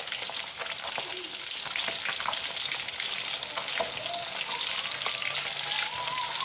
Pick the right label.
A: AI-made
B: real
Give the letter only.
B